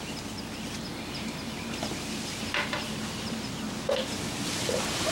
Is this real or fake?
real